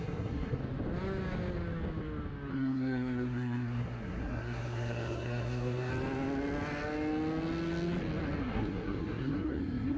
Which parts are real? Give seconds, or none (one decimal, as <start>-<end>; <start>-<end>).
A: 0.6-2.5; 5.9-8.4

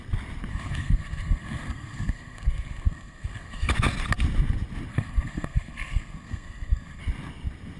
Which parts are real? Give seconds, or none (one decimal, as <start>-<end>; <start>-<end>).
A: 0.0-0.5; 3.7-4.9; 7.0-7.8